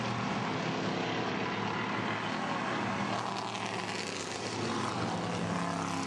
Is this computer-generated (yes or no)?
no